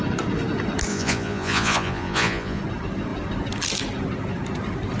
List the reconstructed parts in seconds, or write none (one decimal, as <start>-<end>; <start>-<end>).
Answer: 0.9-2.6